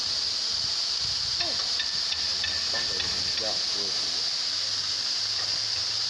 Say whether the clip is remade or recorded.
recorded